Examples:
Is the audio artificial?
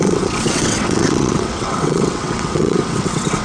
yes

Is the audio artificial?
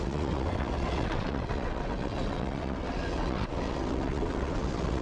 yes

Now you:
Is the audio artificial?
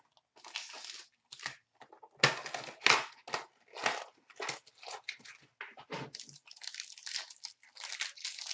no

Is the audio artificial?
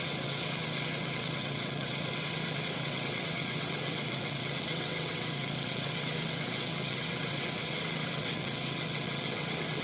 yes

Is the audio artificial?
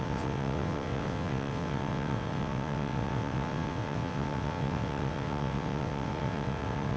yes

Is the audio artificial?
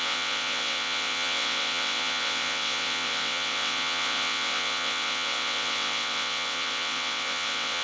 yes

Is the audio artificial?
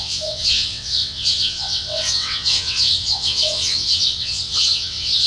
yes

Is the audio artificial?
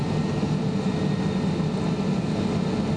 no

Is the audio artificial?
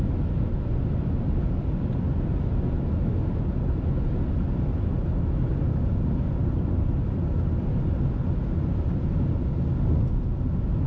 no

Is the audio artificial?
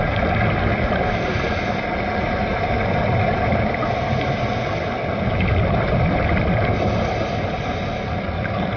no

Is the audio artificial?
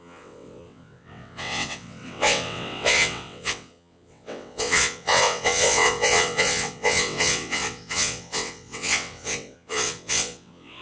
yes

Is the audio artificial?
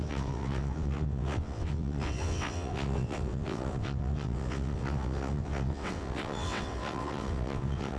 yes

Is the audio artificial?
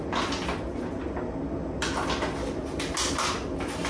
no